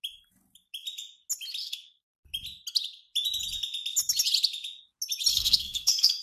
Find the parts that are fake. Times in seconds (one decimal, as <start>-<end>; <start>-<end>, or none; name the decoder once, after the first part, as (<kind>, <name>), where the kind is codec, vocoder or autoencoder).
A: 1.6-2.1 (codec, SNAC); 5.3-6.2